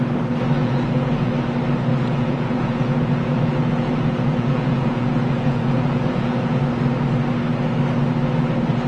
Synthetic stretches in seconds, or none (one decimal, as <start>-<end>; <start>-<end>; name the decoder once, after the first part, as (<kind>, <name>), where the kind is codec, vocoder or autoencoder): 0.6-1.3 (vocoder, Vocos); 1.9-6.6